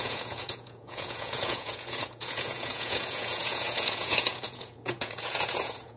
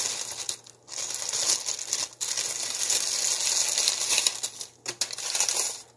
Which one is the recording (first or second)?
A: second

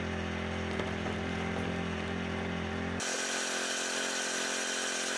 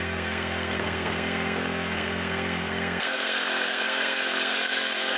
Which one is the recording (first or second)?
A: first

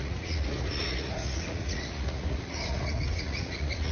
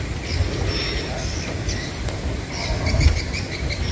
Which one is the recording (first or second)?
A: second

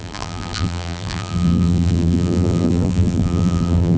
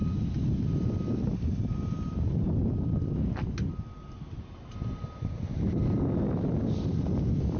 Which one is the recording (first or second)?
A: second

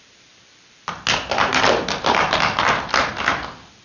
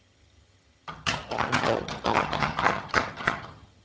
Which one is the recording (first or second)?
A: first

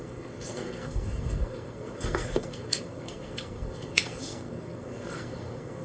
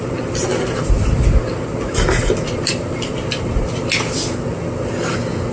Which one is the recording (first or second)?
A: second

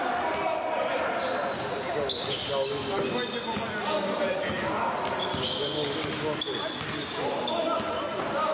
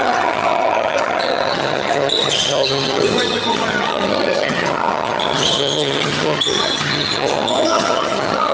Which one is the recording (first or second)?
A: first